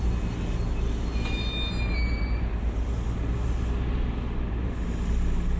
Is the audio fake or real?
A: real